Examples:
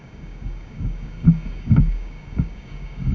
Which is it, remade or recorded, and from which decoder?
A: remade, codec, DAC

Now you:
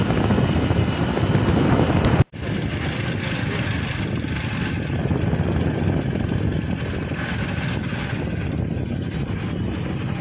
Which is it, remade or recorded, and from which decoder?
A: recorded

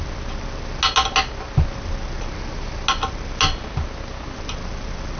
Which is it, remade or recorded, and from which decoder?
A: recorded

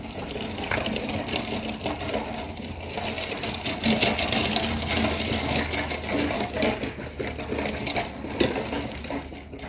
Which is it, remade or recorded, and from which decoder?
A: recorded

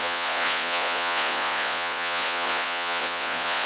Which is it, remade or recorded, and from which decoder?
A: remade, vocoder, Vocos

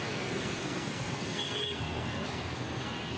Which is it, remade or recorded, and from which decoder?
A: remade, codec, SNAC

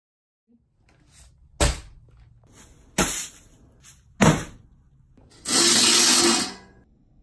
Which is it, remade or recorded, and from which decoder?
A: recorded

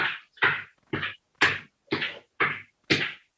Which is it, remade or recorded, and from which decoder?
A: recorded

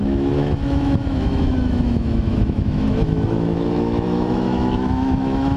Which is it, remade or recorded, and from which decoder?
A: remade, autoencoder, DAC-VAE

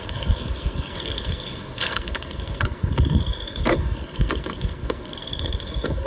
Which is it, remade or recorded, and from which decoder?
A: remade, codec, SNAC